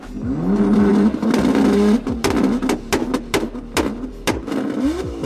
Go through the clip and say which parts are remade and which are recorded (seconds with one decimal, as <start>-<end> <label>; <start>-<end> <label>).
0.0-5.3 recorded